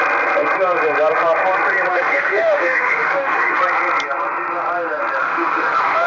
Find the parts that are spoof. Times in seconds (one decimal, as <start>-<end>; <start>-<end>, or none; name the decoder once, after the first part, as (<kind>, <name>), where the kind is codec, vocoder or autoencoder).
1.9-3.6 (autoencoder, DAC-VAE); 5.2-6.1